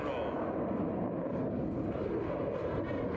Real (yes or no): yes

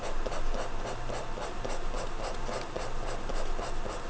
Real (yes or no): yes